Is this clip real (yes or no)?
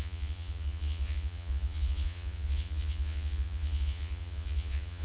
no